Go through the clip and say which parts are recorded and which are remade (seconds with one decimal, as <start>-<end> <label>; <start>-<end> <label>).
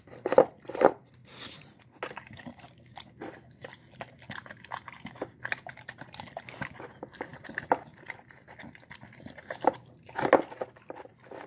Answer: 0.0-1.2 recorded; 1.2-1.8 remade; 1.8-11.5 recorded